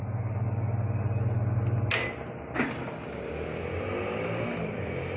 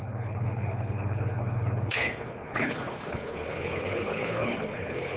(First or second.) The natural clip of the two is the first